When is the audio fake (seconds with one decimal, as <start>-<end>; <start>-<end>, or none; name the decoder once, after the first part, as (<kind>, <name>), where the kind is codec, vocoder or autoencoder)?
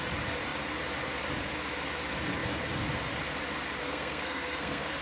3.8-5.0 (codec, SNAC)